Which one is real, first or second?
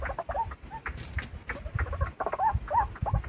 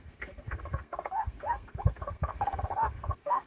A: first